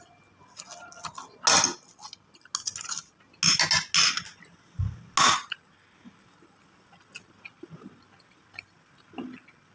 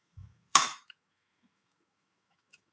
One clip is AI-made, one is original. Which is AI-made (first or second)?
second